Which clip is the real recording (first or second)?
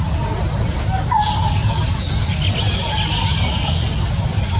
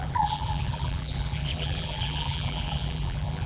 first